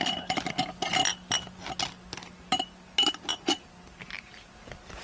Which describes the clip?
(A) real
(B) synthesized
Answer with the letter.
A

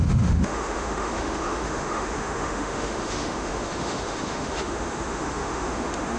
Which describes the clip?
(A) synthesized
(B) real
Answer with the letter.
A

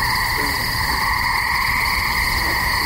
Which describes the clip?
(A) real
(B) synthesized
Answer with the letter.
A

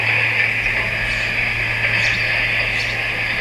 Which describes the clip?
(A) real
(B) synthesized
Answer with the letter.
A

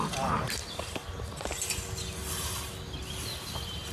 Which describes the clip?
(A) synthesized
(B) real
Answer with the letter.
B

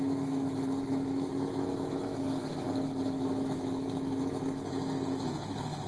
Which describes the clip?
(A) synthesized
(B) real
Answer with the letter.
A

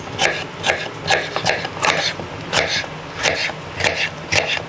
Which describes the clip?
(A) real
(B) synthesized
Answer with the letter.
A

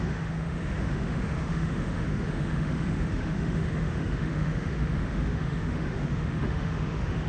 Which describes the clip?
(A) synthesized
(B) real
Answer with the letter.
A